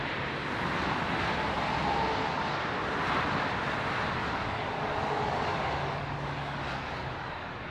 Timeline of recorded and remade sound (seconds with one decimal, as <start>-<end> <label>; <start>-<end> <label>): 0.0-4.2 recorded; 4.2-7.7 remade